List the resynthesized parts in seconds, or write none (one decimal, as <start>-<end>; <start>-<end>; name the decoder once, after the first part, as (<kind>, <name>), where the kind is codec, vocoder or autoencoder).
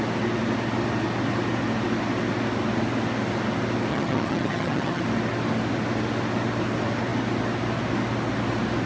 3.9-5.0 (vocoder, HiFi-GAN)